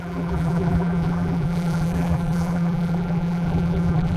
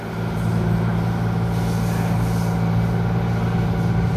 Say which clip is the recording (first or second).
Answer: second